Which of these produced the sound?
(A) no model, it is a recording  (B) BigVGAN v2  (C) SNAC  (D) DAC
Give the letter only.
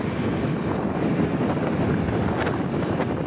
A